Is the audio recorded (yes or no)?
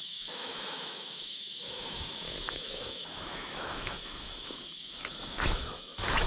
no